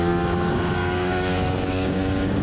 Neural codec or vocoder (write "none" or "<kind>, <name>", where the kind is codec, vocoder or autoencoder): codec, DAC